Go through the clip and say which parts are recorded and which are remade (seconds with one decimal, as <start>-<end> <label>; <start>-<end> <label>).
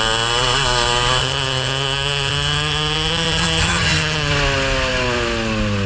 0.0-1.2 recorded; 1.2-4.3 remade; 4.3-5.9 recorded